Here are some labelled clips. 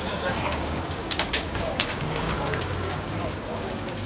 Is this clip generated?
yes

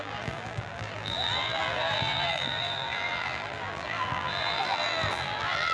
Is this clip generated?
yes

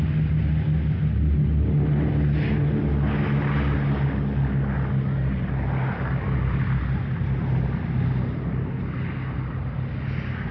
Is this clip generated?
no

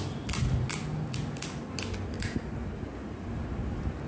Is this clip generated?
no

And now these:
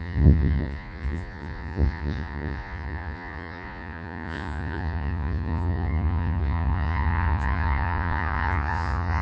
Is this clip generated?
yes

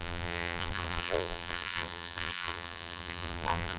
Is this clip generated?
yes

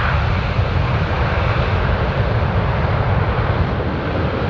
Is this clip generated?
no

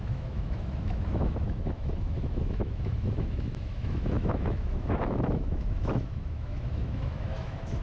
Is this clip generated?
yes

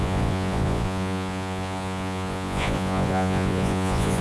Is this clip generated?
yes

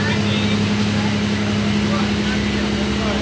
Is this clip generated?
no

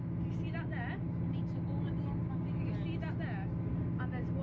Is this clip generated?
no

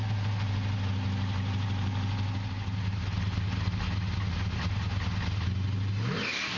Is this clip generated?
no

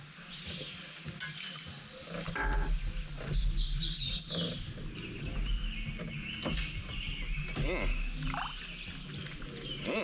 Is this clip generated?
no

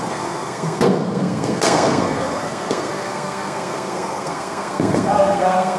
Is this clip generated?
yes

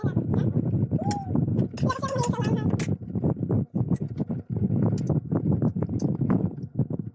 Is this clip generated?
no